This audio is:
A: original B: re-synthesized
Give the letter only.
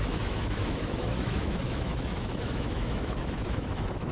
B